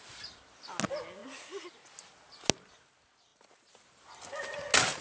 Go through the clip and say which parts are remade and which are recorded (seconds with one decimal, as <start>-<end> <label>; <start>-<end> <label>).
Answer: 0.0-5.0 recorded